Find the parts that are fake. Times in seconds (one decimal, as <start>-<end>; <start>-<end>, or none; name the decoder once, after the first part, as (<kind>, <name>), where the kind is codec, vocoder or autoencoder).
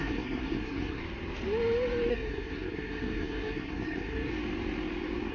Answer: 0.0-1.0 (codec, SNAC); 2.1-4.3